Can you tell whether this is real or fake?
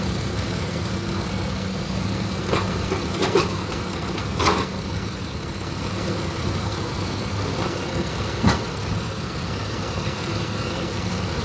fake